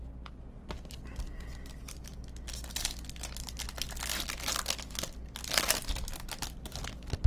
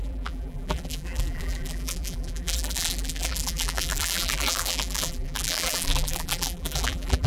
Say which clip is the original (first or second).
first